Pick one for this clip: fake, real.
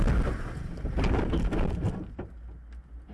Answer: real